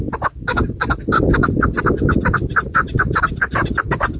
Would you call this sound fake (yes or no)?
no